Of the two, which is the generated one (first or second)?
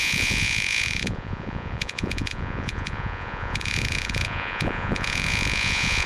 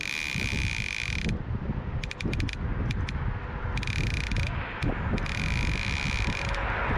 first